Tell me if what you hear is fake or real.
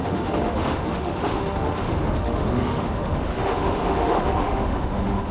fake